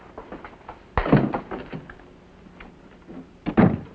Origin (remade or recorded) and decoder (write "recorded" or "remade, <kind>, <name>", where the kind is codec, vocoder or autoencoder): recorded